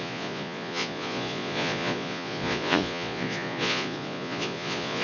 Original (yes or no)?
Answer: no